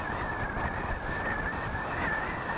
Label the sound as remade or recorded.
recorded